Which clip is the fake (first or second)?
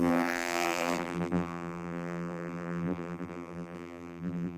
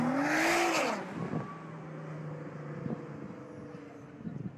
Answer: first